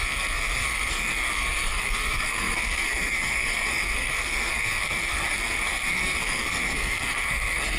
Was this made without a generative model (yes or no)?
no